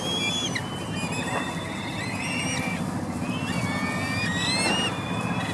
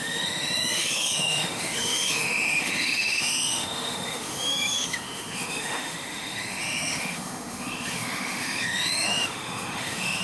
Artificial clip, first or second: second